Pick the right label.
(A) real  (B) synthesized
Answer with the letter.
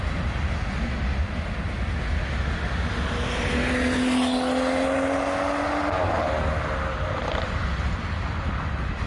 A